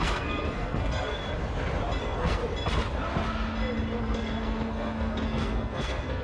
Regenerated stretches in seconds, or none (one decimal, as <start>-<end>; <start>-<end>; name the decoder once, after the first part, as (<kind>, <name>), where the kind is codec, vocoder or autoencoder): 0.0-1.2 (codec, SNAC); 2.0-2.4; 4.0-6.2